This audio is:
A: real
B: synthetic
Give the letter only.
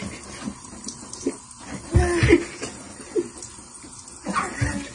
A